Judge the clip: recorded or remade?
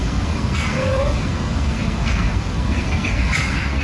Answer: remade